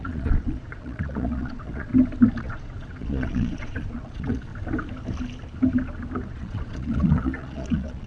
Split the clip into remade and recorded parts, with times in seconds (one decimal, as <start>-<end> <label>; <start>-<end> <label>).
0.0-1.9 remade; 1.9-2.4 recorded; 2.4-4.5 remade; 4.5-6.3 recorded; 6.3-8.1 remade